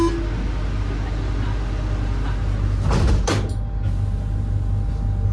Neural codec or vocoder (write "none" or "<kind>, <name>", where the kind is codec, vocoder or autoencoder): none